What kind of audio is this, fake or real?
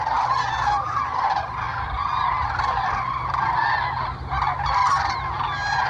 real